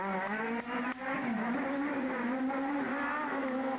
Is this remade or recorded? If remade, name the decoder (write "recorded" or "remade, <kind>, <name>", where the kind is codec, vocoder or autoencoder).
recorded